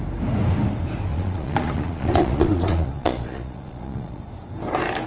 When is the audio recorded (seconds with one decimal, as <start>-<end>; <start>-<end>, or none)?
0.0-1.1; 4.2-5.1